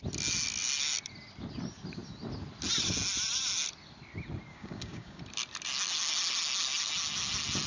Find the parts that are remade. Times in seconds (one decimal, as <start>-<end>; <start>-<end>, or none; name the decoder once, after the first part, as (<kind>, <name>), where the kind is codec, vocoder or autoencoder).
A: 4.5-5.2 (codec, DAC)